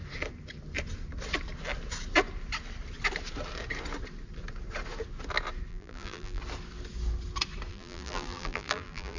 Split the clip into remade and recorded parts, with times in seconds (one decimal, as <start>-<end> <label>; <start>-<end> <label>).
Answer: 0.0-5.7 recorded; 5.7-6.4 remade; 6.4-7.7 recorded; 7.7-9.2 remade